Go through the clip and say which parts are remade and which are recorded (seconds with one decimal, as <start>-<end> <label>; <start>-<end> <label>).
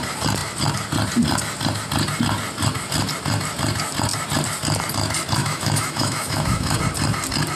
0.0-5.4 recorded; 5.4-6.8 remade; 6.8-7.6 recorded